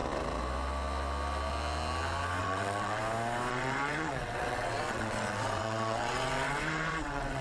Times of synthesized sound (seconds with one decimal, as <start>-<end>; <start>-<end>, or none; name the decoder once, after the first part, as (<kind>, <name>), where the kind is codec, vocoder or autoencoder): 2.4-3.0 (vocoder, WaveNeXt); 3.5-7.4